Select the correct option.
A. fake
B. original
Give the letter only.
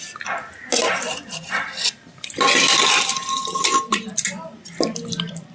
B